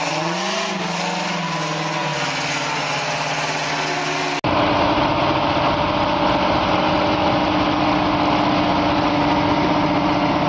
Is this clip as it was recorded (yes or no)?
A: yes